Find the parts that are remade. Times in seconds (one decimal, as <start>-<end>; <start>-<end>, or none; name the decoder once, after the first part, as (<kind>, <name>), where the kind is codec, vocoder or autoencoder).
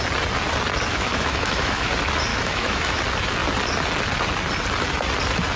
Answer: 0.9-1.9 (autoencoder, DAC-VAE); 2.3-3.0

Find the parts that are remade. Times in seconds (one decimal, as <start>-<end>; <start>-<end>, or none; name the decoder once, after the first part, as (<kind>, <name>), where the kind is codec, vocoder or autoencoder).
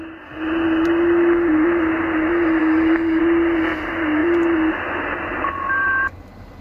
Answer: 2.6-3.2 (codec, DAC)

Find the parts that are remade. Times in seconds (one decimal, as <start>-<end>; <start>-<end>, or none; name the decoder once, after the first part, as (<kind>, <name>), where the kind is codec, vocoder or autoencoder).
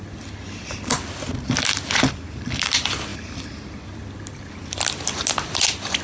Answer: none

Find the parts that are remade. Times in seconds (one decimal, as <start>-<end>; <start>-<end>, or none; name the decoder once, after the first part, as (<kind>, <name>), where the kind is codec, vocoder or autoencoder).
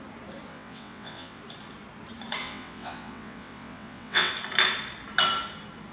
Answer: 0.5-1.4 (vocoder, WaveNeXt); 2.4-4.3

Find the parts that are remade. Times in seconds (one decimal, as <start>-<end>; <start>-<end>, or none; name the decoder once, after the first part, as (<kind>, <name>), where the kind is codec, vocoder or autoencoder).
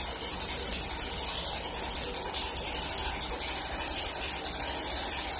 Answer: none